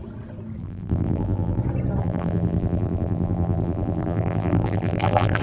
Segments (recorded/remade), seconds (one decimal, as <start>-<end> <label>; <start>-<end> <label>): 0.0-0.6 recorded; 0.6-1.6 remade; 1.6-2.0 recorded; 2.0-5.4 remade